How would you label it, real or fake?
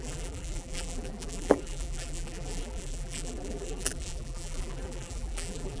fake